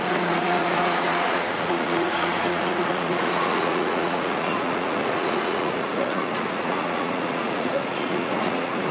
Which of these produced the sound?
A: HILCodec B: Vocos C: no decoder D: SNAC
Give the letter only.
B